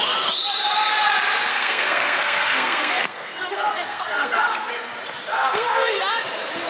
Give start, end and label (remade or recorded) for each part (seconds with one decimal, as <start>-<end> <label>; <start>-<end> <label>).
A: 0.0-1.5 recorded; 1.5-4.7 remade; 4.7-5.3 recorded; 5.3-6.1 remade; 6.1-6.7 recorded